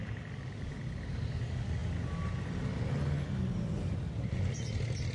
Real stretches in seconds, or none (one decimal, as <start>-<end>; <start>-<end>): 0.0-5.1